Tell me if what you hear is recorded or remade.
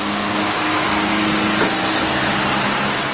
recorded